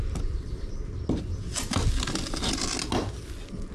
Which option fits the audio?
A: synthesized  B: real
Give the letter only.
B